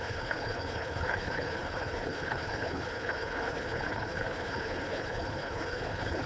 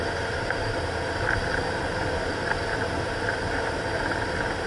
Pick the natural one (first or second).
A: second